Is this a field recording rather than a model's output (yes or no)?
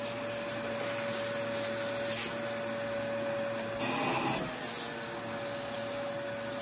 yes